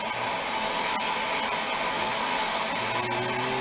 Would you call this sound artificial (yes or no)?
no